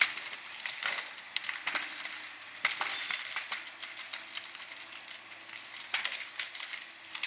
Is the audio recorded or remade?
recorded